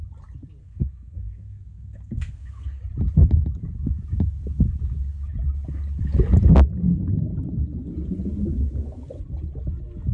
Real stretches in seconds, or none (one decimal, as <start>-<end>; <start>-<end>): 0.0-0.6; 2.8-10.1